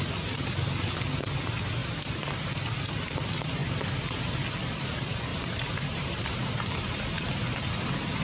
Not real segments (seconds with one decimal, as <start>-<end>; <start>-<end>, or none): 1.8-2.5; 3.6-4.2; 5.3-6.5